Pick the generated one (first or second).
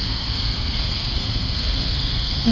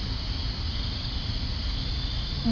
first